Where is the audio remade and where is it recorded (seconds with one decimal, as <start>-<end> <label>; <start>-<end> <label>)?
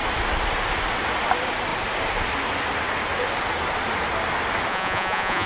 0.0-4.7 recorded; 4.7-5.5 remade